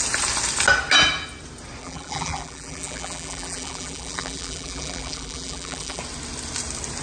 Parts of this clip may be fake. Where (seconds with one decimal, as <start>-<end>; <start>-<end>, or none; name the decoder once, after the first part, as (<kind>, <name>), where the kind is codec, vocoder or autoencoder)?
1.8-6.0 (vocoder, BigVGAN v2)